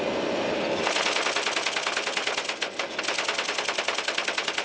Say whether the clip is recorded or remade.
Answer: recorded